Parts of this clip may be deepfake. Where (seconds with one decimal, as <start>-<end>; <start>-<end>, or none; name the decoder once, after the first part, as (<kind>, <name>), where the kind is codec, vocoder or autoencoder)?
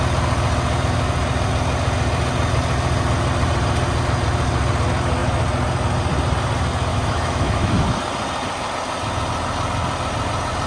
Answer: 6.9-7.7 (autoencoder, DAC-VAE)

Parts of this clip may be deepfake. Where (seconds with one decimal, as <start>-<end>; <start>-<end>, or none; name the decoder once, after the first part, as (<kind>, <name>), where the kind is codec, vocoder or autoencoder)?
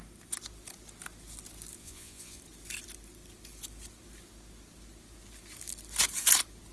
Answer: 1.8-2.4 (vocoder, Vocos)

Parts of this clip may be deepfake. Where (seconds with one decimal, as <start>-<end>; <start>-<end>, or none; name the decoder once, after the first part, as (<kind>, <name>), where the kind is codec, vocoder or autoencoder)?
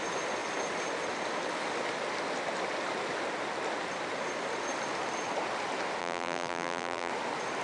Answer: 6.0-7.1 (vocoder, BigVGAN v2)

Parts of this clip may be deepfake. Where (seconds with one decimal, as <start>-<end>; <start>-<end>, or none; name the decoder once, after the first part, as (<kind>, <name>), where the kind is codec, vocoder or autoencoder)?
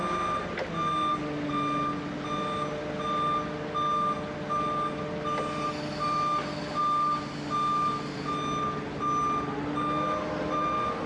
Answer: none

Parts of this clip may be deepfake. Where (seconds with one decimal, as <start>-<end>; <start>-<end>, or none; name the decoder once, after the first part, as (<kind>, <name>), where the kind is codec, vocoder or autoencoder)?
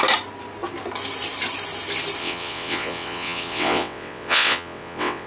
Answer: 2.2-5.3 (vocoder, WaveNeXt)